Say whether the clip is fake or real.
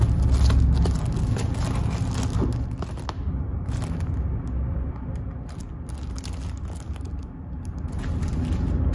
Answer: real